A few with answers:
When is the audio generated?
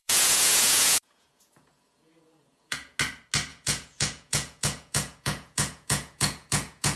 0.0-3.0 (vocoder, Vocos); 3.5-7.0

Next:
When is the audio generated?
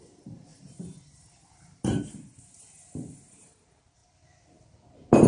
0.0-4.0 (vocoder, BigVGAN v2)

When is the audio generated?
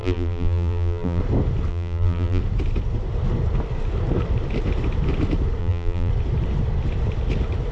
0.0-1.2 (vocoder, BigVGAN v2); 1.7-2.4; 5.6-6.1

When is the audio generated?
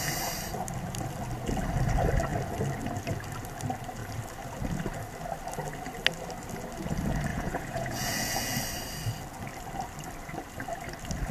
7.3-8.6 (vocoder, Vocos)